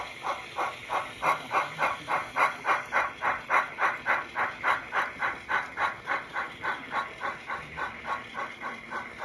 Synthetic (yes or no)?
no